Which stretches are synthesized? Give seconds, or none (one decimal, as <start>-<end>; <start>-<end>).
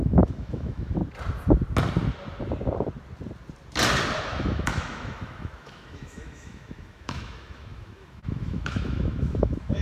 0.0-1.0; 4.2-9.8